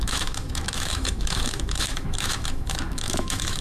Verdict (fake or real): fake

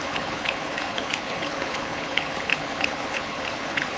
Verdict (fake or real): fake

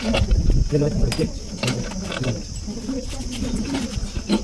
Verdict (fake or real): real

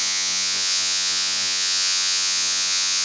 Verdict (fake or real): fake